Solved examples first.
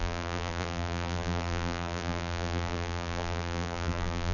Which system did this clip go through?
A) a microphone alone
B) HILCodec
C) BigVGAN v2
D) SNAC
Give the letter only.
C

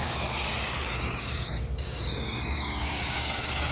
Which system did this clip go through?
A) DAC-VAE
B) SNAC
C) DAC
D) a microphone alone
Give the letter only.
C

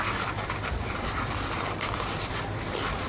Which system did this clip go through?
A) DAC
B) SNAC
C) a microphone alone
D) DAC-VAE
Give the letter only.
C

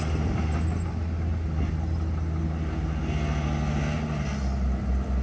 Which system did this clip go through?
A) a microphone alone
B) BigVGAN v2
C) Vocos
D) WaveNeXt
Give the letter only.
A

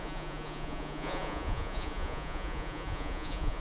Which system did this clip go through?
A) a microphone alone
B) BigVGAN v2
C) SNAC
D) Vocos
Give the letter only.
D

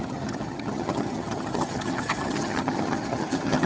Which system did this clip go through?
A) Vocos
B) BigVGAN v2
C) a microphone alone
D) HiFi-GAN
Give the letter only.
D